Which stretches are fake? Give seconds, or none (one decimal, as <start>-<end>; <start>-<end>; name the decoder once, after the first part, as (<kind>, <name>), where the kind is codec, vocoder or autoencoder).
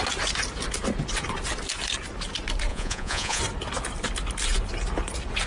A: 2.7-3.4 (vocoder, Vocos)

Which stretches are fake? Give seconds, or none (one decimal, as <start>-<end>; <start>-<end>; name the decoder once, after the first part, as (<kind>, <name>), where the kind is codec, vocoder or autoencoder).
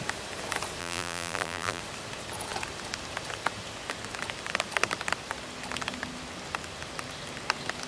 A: 0.8-1.8 (vocoder, BigVGAN v2)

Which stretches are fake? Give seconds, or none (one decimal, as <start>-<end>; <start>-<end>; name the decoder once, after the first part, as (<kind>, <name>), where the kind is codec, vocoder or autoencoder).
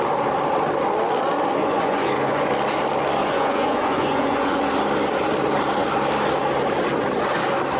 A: 1.6-2.5 (vocoder, Vocos); 3.2-4.6